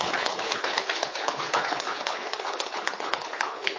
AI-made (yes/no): yes